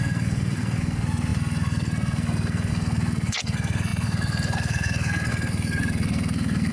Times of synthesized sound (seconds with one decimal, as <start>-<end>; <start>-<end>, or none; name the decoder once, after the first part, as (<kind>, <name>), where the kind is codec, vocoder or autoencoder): 0.0-6.7 (codec, SNAC)